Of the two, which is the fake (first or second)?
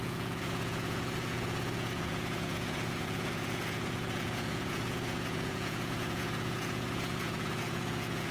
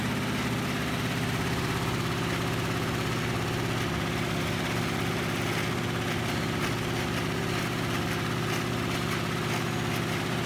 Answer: first